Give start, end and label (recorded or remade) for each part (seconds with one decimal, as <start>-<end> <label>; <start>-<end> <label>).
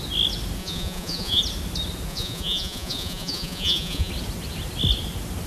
0.0-0.6 recorded; 0.6-1.4 remade; 1.4-2.1 recorded; 2.1-4.1 remade; 4.1-5.5 recorded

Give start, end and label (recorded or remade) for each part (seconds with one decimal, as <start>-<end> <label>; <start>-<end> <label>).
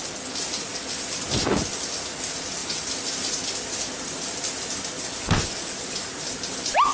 0.0-6.9 recorded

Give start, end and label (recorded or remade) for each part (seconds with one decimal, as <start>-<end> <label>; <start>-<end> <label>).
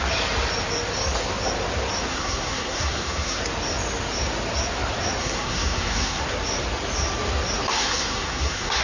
0.0-2.1 recorded; 2.1-3.4 remade; 3.4-5.2 recorded; 5.2-6.2 remade; 6.2-7.7 recorded; 7.7-8.8 remade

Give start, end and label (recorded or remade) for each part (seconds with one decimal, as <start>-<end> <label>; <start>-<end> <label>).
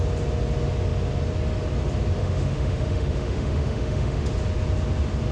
0.0-2.2 recorded; 2.2-4.3 remade; 4.3-5.3 recorded